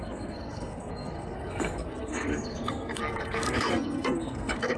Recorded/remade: remade